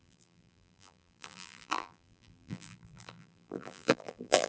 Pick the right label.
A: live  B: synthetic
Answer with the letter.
B